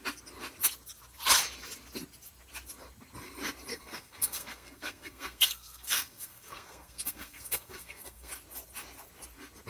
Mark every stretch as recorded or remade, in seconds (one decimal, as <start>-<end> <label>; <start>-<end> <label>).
0.0-3.7 recorded; 3.7-8.3 remade; 8.3-9.7 recorded

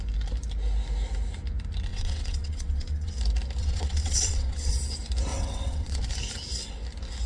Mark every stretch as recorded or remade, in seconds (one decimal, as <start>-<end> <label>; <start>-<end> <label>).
0.0-1.9 recorded; 1.9-3.1 remade; 3.1-3.6 recorded; 3.6-4.7 remade; 4.7-5.3 recorded; 5.3-6.0 remade; 6.0-7.3 recorded

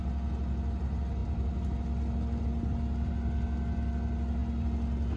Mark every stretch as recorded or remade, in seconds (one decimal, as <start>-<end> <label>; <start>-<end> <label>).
0.0-5.2 recorded

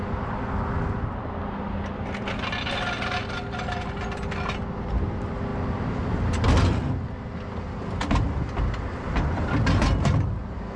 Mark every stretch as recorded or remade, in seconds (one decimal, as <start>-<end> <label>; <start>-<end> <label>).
0.0-10.8 recorded

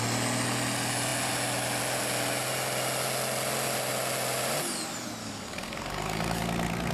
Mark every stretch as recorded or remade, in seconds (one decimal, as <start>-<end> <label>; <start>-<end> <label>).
0.0-5.2 recorded; 5.2-6.4 remade; 6.4-6.9 recorded